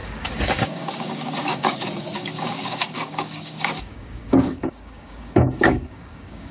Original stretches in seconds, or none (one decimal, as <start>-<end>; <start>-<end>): none